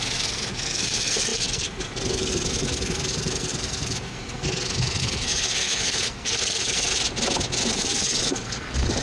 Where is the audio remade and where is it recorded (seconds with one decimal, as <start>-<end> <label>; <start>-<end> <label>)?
0.0-6.9 remade; 6.9-7.7 recorded; 7.7-9.0 remade